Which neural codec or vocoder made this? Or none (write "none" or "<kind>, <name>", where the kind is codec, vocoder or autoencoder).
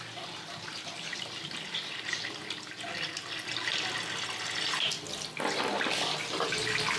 none